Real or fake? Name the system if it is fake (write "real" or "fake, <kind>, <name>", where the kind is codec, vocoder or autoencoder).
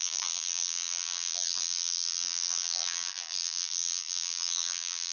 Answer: fake, vocoder, BigVGAN v2